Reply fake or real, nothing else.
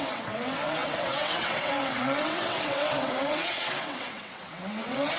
fake